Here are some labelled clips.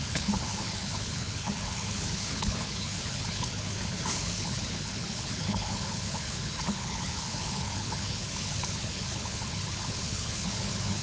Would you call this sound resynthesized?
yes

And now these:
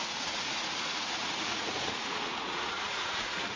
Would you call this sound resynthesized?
yes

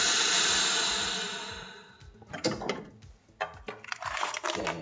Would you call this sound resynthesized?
no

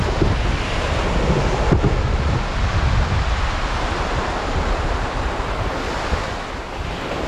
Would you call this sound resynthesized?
no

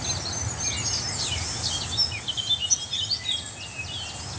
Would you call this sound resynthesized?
no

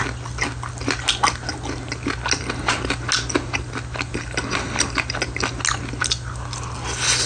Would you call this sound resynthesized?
no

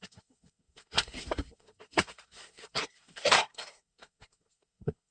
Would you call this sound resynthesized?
yes